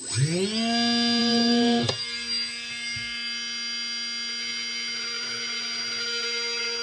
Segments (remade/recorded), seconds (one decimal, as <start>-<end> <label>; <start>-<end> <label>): 0.0-1.2 recorded; 1.2-1.9 remade; 1.9-6.8 recorded